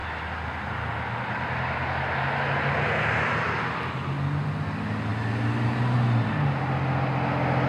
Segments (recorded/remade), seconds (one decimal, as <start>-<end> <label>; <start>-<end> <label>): 0.0-7.7 recorded